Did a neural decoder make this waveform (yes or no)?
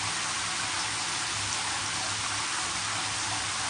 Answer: no